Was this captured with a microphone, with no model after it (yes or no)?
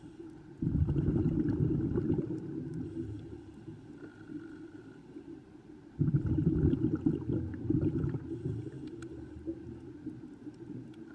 yes